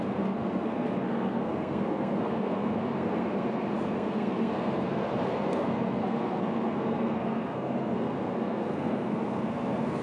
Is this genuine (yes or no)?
no